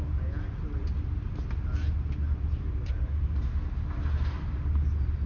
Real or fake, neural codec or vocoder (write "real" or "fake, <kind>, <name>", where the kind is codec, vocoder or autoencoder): real